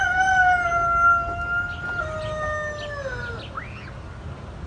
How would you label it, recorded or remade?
recorded